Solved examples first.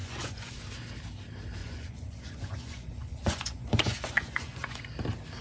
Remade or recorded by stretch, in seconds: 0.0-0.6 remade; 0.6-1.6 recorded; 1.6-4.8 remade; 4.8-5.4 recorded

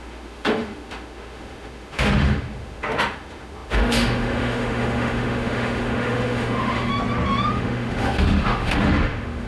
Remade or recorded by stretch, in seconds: 0.0-6.9 remade; 6.9-7.5 recorded; 7.5-9.5 remade

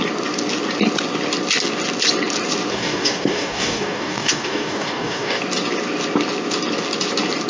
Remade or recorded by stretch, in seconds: 0.0-2.7 recorded; 2.7-5.4 remade; 5.4-7.5 recorded

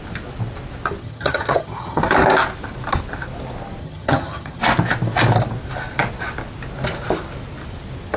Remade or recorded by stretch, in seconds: 0.0-1.0 recorded; 1.0-2.0 remade; 2.0-3.8 recorded; 3.8-4.6 remade; 4.6-8.2 recorded

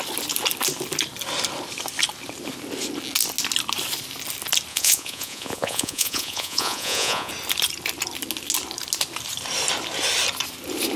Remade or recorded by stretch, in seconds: 0.0-4.7 recorded; 4.7-7.3 remade; 7.3-11.0 recorded

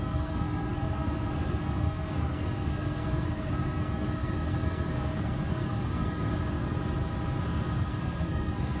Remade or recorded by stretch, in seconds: 0.0-6.8 remade; 6.8-7.4 recorded; 7.4-8.8 remade